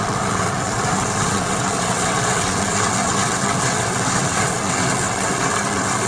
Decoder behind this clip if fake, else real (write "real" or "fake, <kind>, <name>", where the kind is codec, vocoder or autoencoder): fake, vocoder, WaveNeXt